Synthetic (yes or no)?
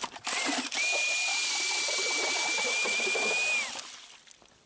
no